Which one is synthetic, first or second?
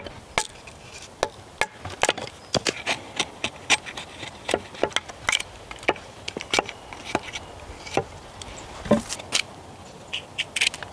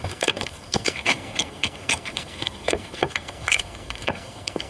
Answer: second